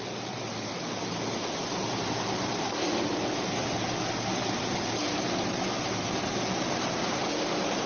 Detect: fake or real fake